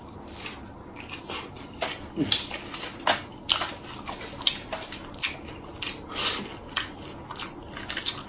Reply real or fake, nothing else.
real